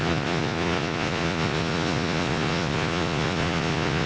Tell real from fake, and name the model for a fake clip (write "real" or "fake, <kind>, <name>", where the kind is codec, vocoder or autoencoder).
fake, vocoder, Vocos